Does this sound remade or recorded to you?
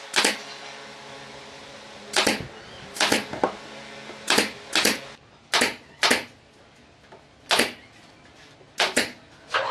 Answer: recorded